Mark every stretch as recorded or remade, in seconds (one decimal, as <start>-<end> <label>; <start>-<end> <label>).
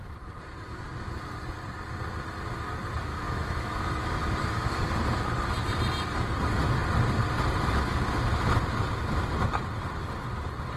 0.0-3.1 recorded; 3.1-4.8 remade; 4.8-10.8 recorded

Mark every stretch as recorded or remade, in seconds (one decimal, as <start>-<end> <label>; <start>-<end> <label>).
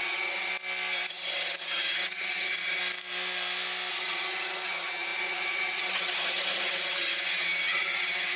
0.0-0.5 remade; 0.5-1.1 recorded; 1.1-2.8 remade; 2.8-3.9 recorded; 3.9-8.4 remade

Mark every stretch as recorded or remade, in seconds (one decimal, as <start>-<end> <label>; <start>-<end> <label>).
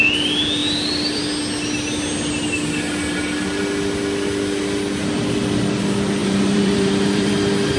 0.0-6.2 recorded; 6.2-7.3 remade; 7.3-7.8 recorded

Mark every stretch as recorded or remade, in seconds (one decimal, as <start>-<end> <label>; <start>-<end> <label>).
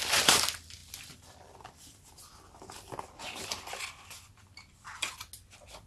0.0-0.8 recorded; 0.8-2.1 remade; 2.1-5.9 recorded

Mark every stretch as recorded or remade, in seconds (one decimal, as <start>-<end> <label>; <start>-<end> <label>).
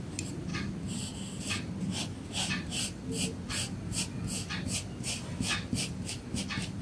0.0-6.8 recorded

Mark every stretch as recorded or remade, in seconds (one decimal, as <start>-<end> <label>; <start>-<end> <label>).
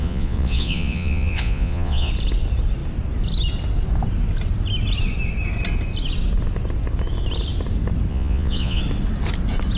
0.0-2.1 remade; 2.1-8.1 recorded; 8.1-8.8 remade; 8.8-9.8 recorded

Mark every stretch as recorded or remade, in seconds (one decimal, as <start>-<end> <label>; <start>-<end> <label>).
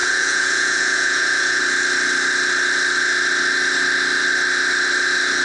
0.0-1.6 remade; 1.6-5.4 recorded